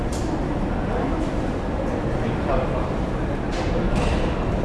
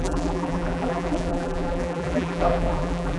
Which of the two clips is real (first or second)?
first